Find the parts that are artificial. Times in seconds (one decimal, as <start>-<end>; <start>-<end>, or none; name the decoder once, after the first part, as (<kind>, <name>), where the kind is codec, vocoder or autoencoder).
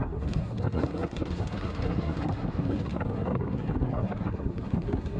0.0-5.2 (codec, SNAC)